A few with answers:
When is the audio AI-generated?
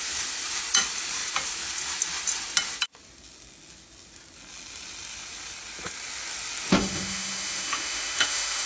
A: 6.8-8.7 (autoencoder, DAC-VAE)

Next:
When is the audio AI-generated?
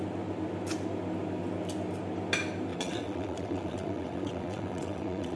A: 2.7-5.4 (vocoder, WaveNeXt)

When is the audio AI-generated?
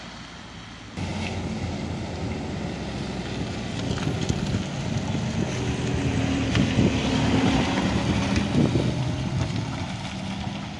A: none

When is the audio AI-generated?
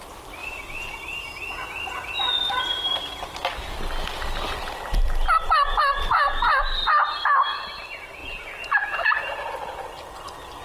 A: 8.2-9.2 (vocoder, Vocos)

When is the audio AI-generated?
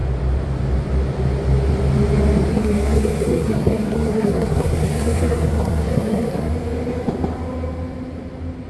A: 2.5-6.5 (codec, SNAC)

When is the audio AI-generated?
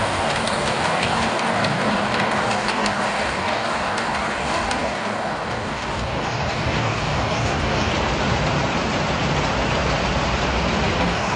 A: 0.0-7.9 (codec, DAC); 11.0-11.4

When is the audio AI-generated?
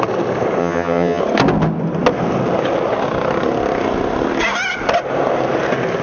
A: 0.6-1.2 (vocoder, HiFi-GAN)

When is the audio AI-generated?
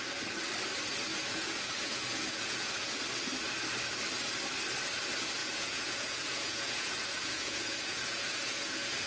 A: 1.1-3.0 (vocoder, Vocos); 5.4-9.1